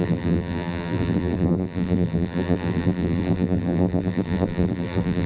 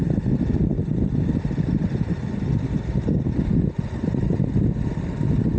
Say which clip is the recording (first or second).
second